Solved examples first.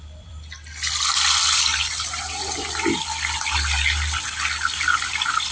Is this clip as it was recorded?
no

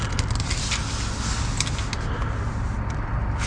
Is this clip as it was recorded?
yes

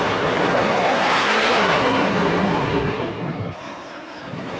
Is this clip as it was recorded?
no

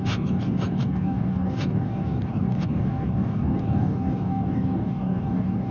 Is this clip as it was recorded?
no